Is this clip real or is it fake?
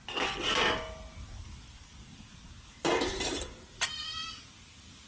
real